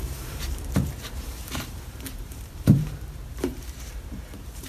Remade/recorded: remade